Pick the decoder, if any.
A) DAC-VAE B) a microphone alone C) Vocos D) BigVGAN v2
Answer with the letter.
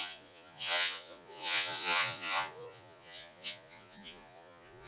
C